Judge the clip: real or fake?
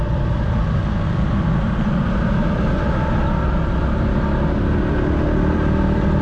real